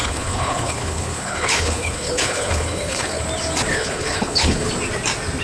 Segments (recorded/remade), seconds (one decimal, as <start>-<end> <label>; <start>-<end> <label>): 0.0-3.2 remade; 3.2-3.7 recorded; 3.7-4.7 remade; 4.7-5.4 recorded